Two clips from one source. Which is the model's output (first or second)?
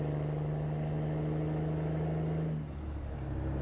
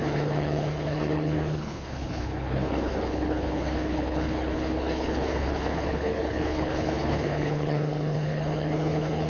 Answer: second